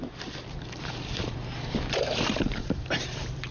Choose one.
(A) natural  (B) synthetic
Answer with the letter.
B